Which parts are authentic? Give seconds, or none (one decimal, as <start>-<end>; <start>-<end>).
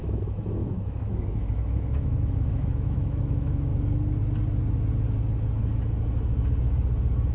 3.7-7.3